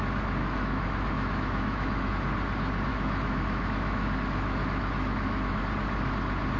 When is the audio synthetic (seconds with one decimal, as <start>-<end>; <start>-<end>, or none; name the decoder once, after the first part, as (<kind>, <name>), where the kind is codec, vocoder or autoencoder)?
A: 0.4-2.1 (autoencoder, DAC-VAE); 2.9-5.6